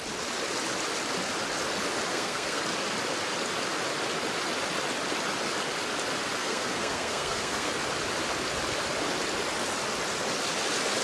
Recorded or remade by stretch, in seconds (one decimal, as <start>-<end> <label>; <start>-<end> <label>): 0.0-2.1 recorded; 2.1-2.6 remade; 2.6-6.4 recorded; 6.4-7.7 remade; 7.7-11.0 recorded